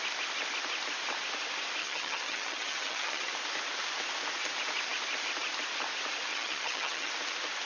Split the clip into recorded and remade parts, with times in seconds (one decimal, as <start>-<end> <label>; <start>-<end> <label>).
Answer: 0.0-1.8 recorded; 1.8-3.3 remade; 3.3-6.3 recorded; 6.3-7.1 remade; 7.1-7.7 recorded